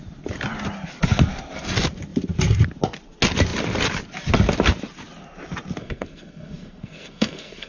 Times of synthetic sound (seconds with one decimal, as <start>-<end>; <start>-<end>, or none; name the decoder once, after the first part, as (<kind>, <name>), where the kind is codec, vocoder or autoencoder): 5.8-7.7 (codec, SNAC)